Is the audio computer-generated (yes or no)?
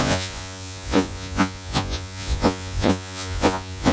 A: yes